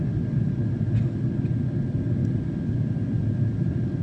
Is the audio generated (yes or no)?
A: no